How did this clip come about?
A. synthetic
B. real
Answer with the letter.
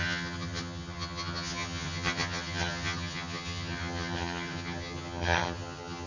A